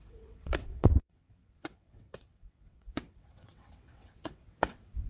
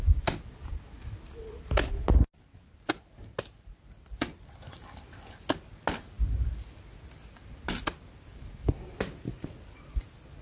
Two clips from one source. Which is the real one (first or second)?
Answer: second